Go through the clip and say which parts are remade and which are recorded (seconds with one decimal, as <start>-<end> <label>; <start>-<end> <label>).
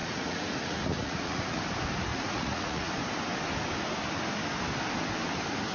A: 0.0-1.6 remade; 1.6-2.1 recorded; 2.1-2.9 remade; 2.9-5.7 recorded